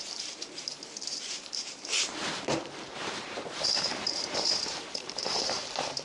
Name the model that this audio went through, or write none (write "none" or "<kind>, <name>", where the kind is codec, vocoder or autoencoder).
vocoder, BigVGAN v2